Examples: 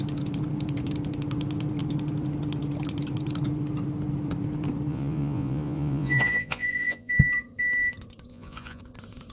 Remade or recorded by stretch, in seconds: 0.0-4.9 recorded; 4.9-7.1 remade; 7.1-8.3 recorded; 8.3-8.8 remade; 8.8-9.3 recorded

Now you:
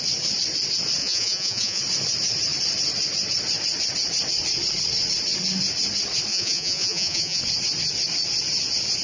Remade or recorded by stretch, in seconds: 0.0-1.0 recorded; 1.0-1.8 remade; 1.8-6.3 recorded; 6.3-7.4 remade; 7.4-9.0 recorded